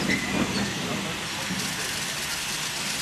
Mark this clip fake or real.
real